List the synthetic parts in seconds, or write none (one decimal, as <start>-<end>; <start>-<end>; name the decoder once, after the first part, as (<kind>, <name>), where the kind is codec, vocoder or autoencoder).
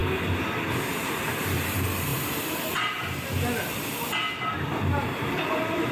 0.9-2.1 (vocoder, BigVGAN v2); 5.0-5.9